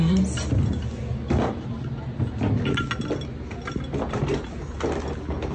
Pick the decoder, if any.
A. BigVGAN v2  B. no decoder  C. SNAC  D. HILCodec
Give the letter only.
B